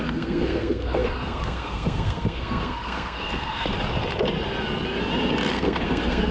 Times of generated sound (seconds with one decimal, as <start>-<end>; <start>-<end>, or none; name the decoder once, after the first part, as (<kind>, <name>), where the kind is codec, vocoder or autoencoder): 0.0-3.7 (codec, SNAC); 5.5-6.3